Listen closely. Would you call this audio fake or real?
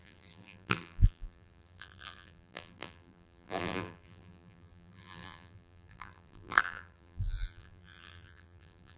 fake